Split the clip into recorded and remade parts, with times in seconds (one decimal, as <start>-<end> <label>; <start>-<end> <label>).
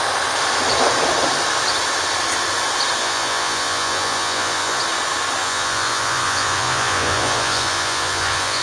0.0-3.0 recorded; 3.0-4.8 remade; 4.8-5.4 recorded; 5.4-8.6 remade